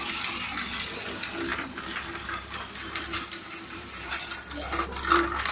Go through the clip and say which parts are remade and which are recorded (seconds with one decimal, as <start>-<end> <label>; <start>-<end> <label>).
0.0-1.5 recorded; 1.5-4.1 remade; 4.1-5.5 recorded